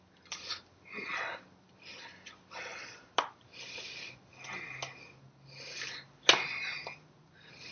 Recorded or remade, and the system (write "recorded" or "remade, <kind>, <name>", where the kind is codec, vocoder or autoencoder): recorded